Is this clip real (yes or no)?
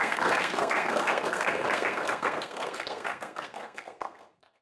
no